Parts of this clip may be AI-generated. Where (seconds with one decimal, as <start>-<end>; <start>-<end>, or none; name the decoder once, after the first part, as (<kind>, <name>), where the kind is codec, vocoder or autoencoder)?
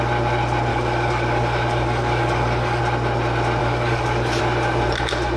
0.7-2.8 (codec, DAC); 3.6-4.4